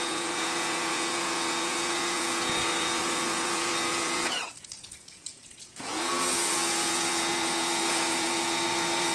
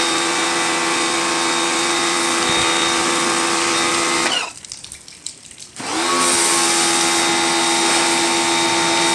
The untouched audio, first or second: second